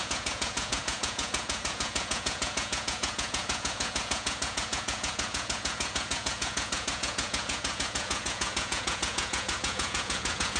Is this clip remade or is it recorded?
remade